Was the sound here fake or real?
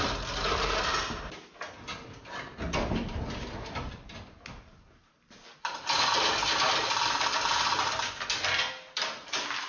real